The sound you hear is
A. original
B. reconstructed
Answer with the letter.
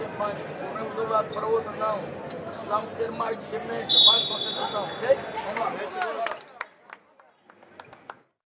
A